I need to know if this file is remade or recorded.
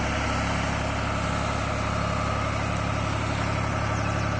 recorded